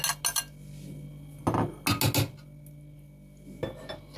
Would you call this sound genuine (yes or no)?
yes